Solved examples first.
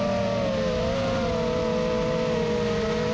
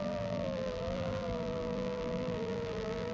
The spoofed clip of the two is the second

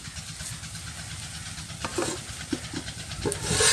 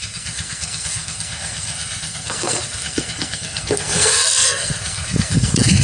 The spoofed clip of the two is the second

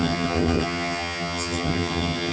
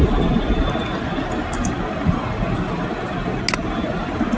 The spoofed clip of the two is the first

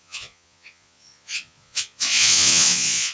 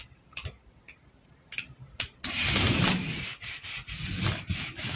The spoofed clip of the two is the first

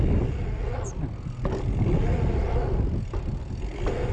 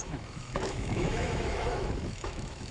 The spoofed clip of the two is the second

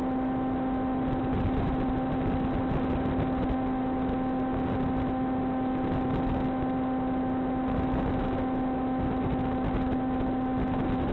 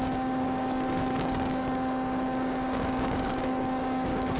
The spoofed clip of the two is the second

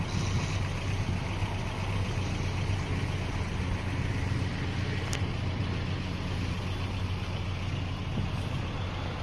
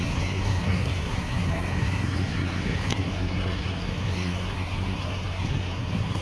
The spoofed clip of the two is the second